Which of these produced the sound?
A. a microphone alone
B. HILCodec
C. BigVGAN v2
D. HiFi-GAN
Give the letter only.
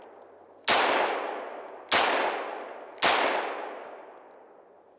A